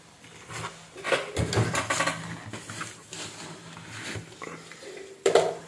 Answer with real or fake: real